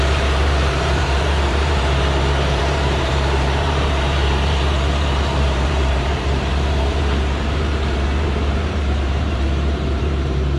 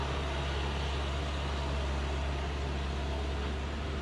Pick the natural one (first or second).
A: second